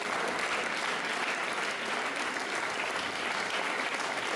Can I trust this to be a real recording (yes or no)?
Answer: yes